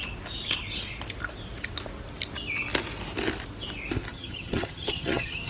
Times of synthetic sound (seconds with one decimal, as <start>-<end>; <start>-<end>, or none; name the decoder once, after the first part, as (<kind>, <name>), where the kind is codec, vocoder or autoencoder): 4.1-5.5 (vocoder, HiFi-GAN)

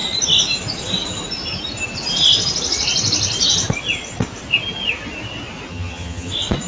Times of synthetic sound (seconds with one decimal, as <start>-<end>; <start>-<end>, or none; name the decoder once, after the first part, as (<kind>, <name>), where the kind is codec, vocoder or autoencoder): 5.7-6.3 (vocoder, HiFi-GAN)

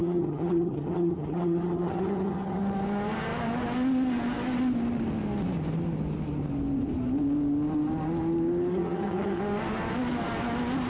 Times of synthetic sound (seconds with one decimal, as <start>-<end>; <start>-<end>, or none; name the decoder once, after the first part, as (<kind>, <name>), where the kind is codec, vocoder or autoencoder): 0.0-2.6 (vocoder, HiFi-GAN); 8.7-9.4

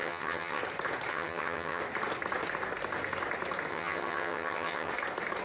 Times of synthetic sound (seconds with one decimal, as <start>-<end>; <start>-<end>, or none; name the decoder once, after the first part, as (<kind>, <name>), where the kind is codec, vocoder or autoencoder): 0.0-0.6 (vocoder, HiFi-GAN); 1.1-1.8; 3.7-4.9

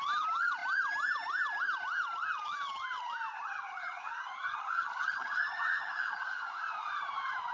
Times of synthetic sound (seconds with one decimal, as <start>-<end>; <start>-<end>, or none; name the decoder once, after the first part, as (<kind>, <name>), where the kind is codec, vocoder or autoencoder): 3.3-6.5 (vocoder, HiFi-GAN)

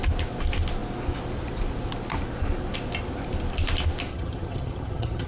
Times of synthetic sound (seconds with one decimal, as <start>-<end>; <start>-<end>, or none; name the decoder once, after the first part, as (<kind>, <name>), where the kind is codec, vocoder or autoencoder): 4.1-5.3 (vocoder, HiFi-GAN)

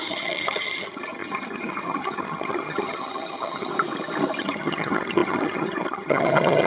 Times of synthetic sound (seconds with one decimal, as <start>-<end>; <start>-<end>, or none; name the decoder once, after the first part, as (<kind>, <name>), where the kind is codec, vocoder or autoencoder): 0.0-3.7 (vocoder, HiFi-GAN); 4.4-6.7